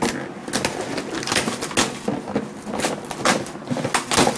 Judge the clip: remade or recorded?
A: recorded